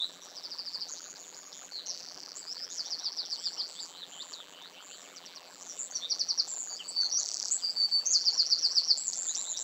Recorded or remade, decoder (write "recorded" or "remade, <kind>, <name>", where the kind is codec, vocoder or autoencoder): remade, vocoder, BigVGAN v2